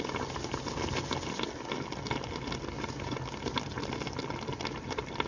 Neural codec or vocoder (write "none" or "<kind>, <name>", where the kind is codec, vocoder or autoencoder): none